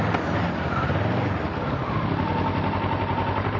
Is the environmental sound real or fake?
real